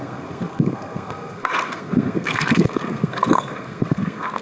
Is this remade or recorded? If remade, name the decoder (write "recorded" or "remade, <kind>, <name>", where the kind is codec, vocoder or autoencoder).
remade, codec, SNAC